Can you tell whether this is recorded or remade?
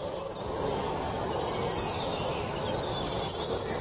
recorded